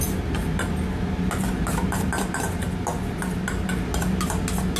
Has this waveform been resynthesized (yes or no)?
no